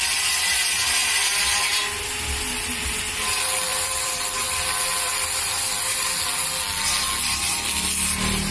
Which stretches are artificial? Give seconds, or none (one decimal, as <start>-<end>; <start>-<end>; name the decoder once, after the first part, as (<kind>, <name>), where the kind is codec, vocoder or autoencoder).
1.0-1.8 (vocoder, BigVGAN v2); 3.7-6.1

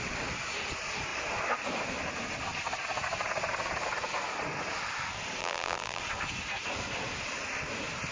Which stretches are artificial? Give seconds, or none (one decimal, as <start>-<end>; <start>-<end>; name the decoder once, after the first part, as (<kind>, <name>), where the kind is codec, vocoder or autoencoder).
5.4-6.0 (vocoder, BigVGAN v2)

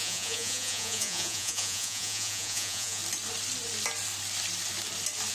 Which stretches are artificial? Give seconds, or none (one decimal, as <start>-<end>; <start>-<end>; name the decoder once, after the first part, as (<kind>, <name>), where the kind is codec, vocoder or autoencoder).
0.0-3.0 (vocoder, Vocos)

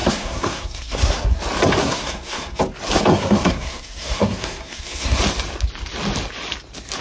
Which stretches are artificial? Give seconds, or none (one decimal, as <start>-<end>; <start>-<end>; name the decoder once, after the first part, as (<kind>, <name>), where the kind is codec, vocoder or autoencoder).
0.0-1.4 (codec, SNAC); 1.8-2.6; 3.1-5.2

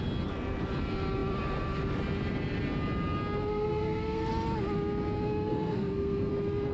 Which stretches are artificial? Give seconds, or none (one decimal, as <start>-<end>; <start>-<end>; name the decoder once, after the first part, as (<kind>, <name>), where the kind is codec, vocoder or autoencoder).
3.5-4.3 (codec, SNAC); 5.5-6.3